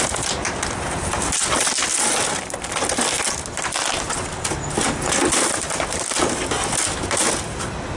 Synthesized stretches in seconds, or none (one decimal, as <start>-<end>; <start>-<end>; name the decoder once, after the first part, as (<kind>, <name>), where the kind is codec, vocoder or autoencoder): none